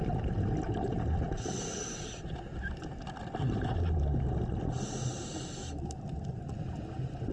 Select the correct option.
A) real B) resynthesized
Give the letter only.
A